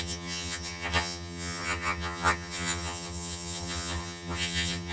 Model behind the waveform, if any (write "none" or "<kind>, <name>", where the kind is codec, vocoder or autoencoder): vocoder, HiFi-GAN